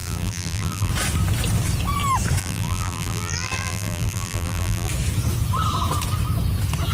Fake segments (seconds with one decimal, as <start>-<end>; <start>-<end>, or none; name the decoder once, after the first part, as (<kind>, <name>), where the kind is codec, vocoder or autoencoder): 0.0-0.9 (vocoder, BigVGAN v2); 2.4-4.9